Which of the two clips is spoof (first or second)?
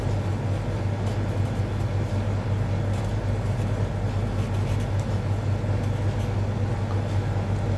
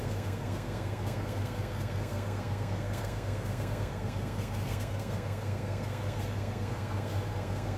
second